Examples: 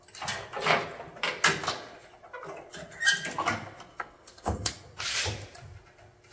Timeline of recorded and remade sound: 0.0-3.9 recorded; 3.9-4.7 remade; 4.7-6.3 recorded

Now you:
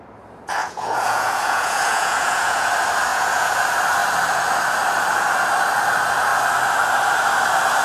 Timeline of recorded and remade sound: 0.0-0.6 recorded; 0.6-2.7 remade; 2.7-3.1 recorded; 3.1-3.6 remade; 3.6-7.8 recorded

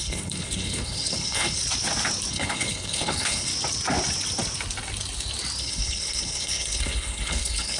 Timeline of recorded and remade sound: 0.0-1.6 remade; 1.6-2.3 recorded; 2.3-3.5 remade; 3.5-5.6 recorded; 5.6-7.8 remade

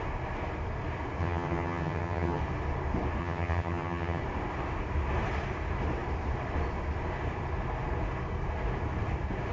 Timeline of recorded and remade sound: 0.0-1.2 recorded; 1.2-2.4 remade; 2.4-3.2 recorded; 3.2-4.2 remade; 4.2-9.5 recorded